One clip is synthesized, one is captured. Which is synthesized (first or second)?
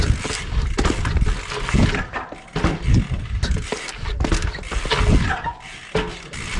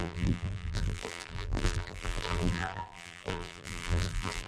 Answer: second